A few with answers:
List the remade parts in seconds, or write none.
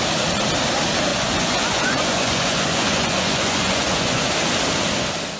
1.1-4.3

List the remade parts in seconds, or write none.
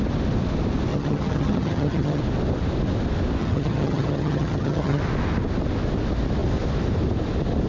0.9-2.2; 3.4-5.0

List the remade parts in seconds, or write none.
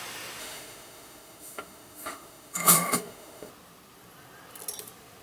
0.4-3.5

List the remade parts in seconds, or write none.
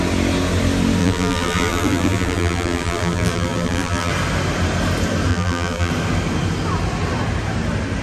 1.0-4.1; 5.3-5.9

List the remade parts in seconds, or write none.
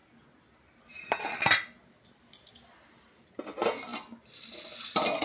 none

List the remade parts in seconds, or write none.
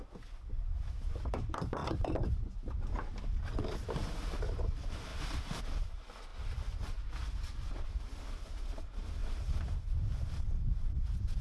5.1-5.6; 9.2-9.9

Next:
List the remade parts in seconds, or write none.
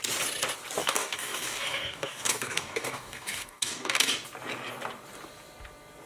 0.8-4.1